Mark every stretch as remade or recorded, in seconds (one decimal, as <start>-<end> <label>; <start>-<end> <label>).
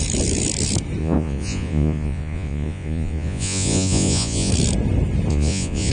0.0-1.0 recorded; 1.0-4.5 remade; 4.5-5.3 recorded; 5.3-5.9 remade